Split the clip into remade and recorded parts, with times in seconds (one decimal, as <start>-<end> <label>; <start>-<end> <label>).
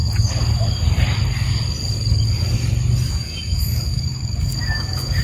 0.0-3.1 recorded; 3.1-5.2 remade